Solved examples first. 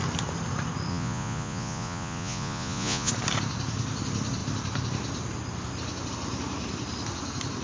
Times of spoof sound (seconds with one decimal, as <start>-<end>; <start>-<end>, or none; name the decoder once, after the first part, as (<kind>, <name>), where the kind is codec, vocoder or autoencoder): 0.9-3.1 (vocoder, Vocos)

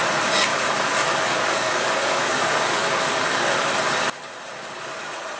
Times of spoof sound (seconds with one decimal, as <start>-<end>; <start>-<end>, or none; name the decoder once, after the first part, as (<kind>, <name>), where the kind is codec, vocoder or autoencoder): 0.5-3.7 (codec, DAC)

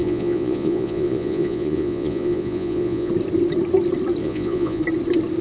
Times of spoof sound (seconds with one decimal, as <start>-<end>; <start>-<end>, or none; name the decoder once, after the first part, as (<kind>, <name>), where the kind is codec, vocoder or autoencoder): 0.0-3.1 (vocoder, Vocos); 4.2-4.8

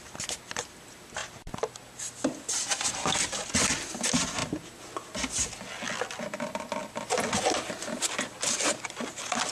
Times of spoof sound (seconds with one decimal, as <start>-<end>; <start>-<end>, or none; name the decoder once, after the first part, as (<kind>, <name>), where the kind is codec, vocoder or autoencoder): none

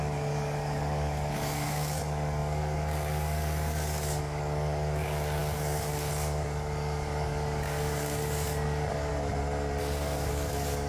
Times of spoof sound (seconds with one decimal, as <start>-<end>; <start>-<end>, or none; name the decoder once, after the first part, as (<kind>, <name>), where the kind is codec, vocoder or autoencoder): 0.0-9.1 (codec, DAC); 9.8-10.9

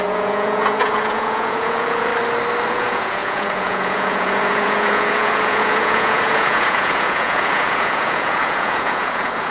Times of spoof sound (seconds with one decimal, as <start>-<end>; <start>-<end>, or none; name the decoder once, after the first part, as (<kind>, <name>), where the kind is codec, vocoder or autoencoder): 0.0-2.1 (vocoder, Vocos); 2.7-9.5

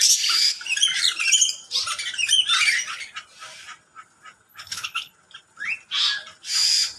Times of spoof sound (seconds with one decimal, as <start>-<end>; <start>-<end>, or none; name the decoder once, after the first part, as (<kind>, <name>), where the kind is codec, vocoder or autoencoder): 4.5-5.1 (codec, HILCodec)

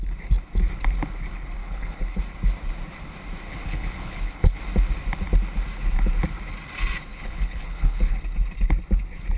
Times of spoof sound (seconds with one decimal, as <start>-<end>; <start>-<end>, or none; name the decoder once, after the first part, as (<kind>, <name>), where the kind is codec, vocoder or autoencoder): 1.6-2.2 (codec, HILCodec); 3.5-4.6; 7.1-8.2